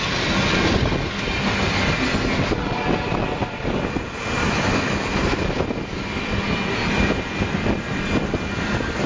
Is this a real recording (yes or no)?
yes